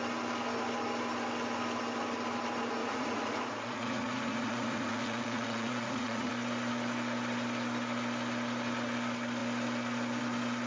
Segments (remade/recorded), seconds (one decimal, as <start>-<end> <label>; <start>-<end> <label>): 0.0-2.8 recorded; 2.8-6.3 remade; 6.3-10.7 recorded

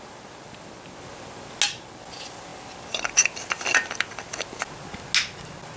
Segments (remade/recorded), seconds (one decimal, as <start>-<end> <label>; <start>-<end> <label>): 0.0-5.8 recorded

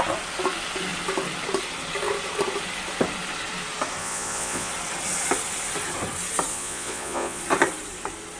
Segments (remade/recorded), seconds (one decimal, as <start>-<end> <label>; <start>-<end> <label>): 0.0-4.0 recorded; 4.0-4.7 remade; 4.7-6.5 recorded; 6.5-7.4 remade; 7.4-8.4 recorded

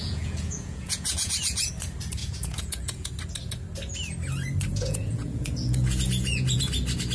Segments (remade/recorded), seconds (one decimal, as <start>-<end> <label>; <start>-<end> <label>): 0.0-1.7 remade; 1.7-2.2 recorded; 2.2-3.2 remade; 3.2-4.7 recorded; 4.7-6.6 remade; 6.6-7.1 recorded

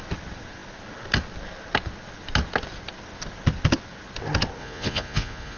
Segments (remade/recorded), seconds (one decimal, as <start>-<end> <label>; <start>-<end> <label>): 0.0-4.6 recorded; 4.6-5.6 remade

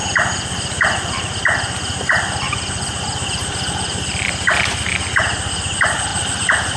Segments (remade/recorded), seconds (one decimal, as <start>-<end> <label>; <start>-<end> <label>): 0.0-6.8 recorded